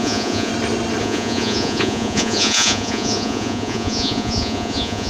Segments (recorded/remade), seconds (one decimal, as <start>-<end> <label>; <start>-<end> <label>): 0.0-0.5 remade; 0.5-1.0 recorded; 1.0-5.1 remade